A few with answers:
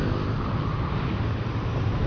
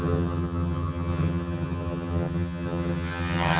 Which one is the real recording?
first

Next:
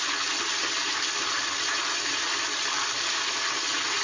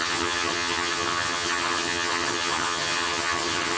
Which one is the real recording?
first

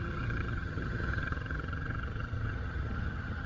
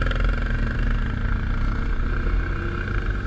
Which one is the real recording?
second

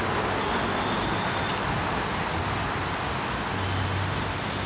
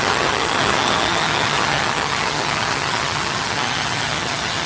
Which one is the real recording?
first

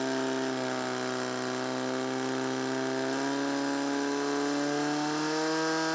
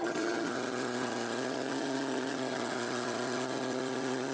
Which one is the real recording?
first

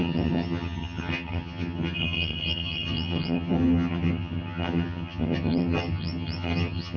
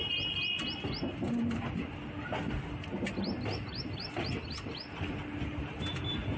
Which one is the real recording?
second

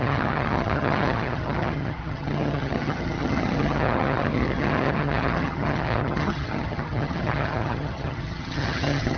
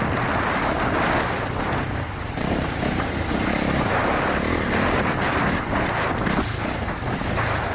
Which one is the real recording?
second